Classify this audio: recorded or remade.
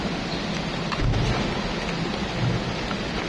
recorded